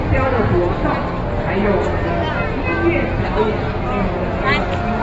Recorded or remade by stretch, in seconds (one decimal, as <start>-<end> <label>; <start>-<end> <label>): 0.0-5.0 recorded

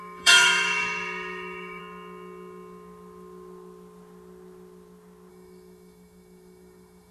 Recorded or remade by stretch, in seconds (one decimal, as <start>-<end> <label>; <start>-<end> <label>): 0.0-1.8 remade; 1.8-5.3 recorded; 5.3-7.1 remade

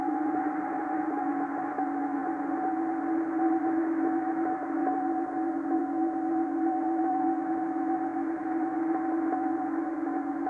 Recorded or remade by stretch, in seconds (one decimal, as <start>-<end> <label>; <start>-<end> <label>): 0.0-2.2 remade; 2.2-3.6 recorded; 3.6-4.8 remade; 4.8-5.8 recorded; 5.8-10.5 remade

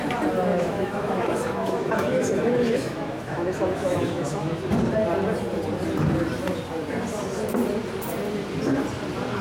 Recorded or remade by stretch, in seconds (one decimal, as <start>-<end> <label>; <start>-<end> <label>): 0.0-0.5 recorded; 0.5-4.6 remade; 4.6-9.4 recorded

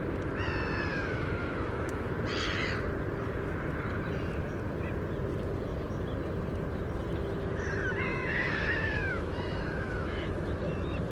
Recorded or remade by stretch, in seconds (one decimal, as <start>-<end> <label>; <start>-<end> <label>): 0.0-0.9 recorded; 0.9-2.1 remade; 2.1-8.1 recorded; 8.1-10.5 remade; 10.5-11.1 recorded

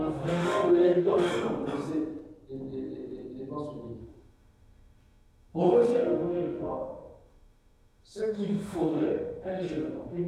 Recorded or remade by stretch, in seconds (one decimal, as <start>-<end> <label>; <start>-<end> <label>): 0.0-1.3 remade; 1.3-4.0 recorded; 4.0-10.3 remade